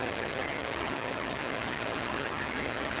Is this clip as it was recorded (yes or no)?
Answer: no